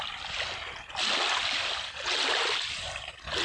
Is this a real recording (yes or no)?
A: yes